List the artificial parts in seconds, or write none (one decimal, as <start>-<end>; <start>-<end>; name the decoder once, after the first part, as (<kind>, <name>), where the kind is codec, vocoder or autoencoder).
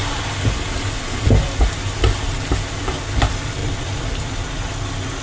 3.6-4.3 (vocoder, BigVGAN v2)